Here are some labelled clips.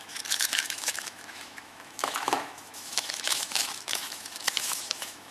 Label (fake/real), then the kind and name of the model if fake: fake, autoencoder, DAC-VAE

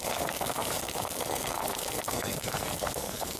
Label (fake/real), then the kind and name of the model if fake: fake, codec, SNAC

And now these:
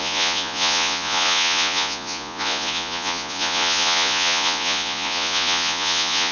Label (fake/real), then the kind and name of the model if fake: fake, vocoder, Vocos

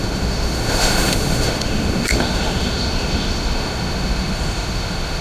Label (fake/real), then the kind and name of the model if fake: fake, autoencoder, DAC-VAE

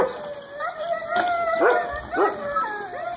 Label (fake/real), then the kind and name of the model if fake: fake, vocoder, BigVGAN v2